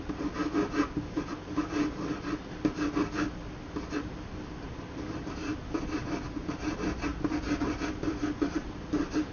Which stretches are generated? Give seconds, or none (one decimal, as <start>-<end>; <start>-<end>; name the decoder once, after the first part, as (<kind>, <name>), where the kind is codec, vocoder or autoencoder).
0.0-0.4 (vocoder, BigVGAN v2); 5.1-5.5; 6.2-7.1